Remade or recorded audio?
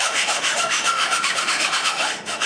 remade